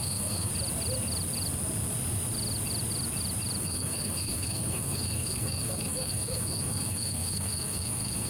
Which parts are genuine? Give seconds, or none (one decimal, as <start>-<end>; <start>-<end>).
0.5-3.6